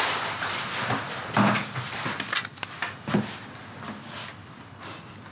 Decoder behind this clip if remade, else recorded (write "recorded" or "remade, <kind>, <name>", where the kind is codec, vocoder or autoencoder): recorded